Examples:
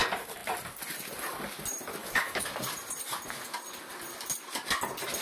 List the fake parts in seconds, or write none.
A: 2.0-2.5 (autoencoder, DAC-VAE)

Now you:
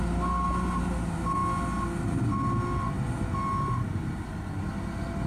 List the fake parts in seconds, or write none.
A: none

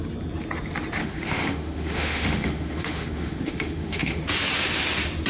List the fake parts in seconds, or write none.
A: 1.0-4.2 (autoencoder, DAC-VAE)

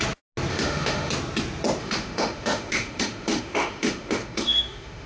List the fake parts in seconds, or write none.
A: 0.5-1.1 (autoencoder, DAC-VAE); 1.8-5.1

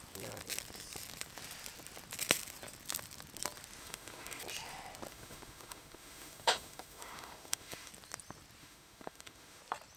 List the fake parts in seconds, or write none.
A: 3.8-4.4 (autoencoder, DAC-VAE); 5.1-7.9; 8.6-9.6

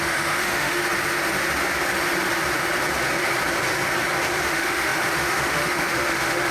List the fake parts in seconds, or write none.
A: 0.0-0.8 (autoencoder, DAC-VAE); 4.4-6.5